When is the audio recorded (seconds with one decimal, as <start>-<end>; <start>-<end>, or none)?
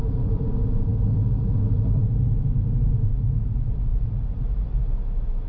0.0-5.5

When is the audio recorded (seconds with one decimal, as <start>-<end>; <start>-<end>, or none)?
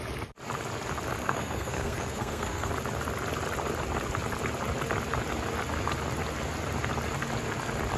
0.0-1.2; 2.7-8.0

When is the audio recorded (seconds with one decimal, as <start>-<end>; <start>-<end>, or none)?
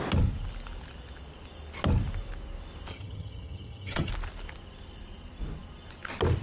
0.0-2.9; 4.1-6.4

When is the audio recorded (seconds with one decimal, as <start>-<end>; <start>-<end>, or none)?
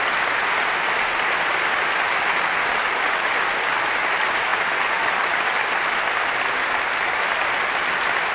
0.0-8.3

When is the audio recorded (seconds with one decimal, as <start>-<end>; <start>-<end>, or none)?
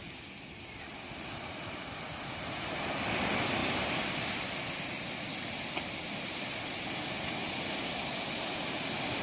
0.0-3.6; 4.6-9.2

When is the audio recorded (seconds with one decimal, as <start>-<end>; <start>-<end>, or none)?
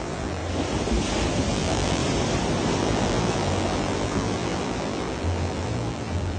0.4-1.5; 2.0-2.8